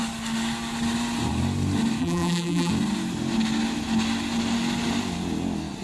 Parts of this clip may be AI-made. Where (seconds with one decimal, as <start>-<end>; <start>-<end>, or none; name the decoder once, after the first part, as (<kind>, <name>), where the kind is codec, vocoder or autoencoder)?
2.0-2.7 (vocoder, BigVGAN v2)